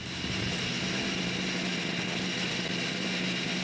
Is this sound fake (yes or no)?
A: no